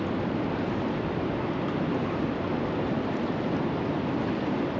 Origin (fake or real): real